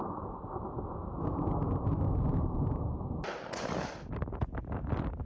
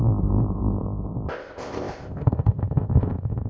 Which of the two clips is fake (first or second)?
second